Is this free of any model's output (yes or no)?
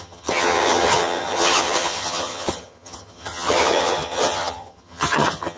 no